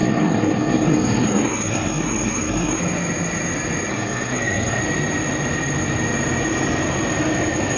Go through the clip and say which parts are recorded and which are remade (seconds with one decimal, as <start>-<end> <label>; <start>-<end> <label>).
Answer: 0.0-2.8 remade; 2.8-3.9 recorded; 3.9-4.8 remade; 4.8-7.8 recorded